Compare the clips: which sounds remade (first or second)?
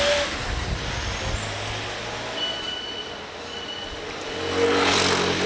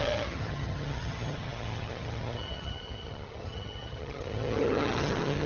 second